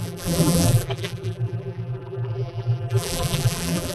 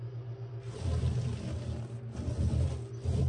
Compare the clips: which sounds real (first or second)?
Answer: second